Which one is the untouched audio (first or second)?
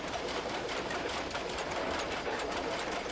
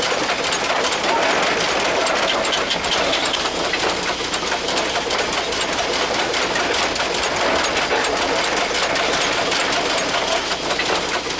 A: second